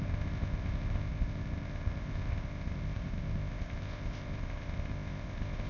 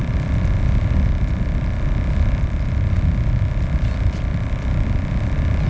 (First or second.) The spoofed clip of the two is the first